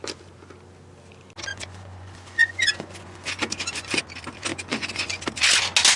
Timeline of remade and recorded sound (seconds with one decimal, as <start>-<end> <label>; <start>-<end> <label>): 0.0-1.5 recorded; 1.5-4.0 remade; 4.0-4.5 recorded; 4.5-5.2 remade; 5.2-6.0 recorded